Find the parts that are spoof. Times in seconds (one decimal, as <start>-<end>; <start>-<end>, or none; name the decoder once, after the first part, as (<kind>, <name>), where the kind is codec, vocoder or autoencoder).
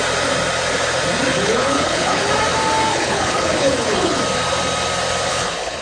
1.3-2.3 (codec, HILCodec); 2.9-4.2; 5.3-5.8